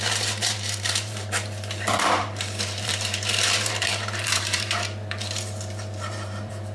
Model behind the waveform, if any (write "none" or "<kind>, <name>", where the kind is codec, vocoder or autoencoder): vocoder, BigVGAN v2